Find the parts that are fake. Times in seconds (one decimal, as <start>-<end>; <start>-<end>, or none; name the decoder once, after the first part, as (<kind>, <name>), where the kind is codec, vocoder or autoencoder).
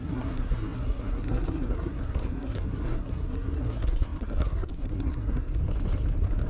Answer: 0.0-5.6 (codec, SNAC)